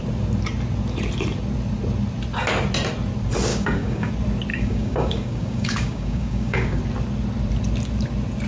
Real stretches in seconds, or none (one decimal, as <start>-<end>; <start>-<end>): 0.0-3.5; 4.1-4.5; 6.8-8.5